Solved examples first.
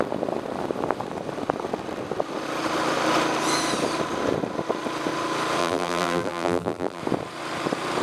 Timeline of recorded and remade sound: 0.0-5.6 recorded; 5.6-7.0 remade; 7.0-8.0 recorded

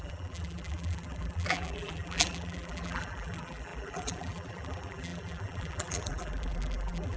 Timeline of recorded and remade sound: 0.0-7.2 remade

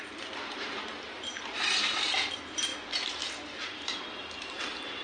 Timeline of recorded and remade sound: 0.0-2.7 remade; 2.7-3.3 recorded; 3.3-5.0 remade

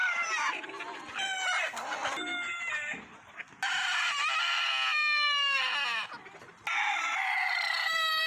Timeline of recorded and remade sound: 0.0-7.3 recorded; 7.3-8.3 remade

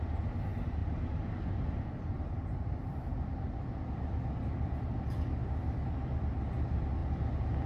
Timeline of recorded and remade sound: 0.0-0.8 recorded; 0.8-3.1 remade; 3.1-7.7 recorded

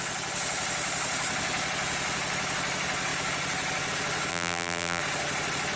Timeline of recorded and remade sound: 0.0-4.3 recorded; 4.3-5.0 remade; 5.0-5.8 recorded

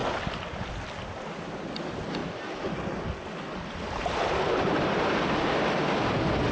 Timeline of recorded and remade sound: 0.0-0.7 remade; 0.7-6.5 recorded